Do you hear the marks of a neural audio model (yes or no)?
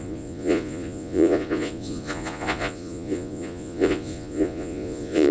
yes